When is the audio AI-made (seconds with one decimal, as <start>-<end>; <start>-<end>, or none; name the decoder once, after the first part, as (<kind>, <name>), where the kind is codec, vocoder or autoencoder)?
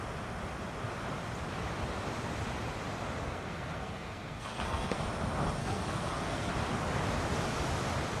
3.2-5.0 (codec, SNAC); 5.6-6.5